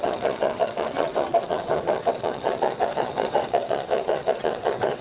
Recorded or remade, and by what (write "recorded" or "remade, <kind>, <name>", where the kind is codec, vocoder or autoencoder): remade, vocoder, WaveNeXt